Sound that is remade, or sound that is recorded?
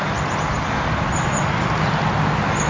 recorded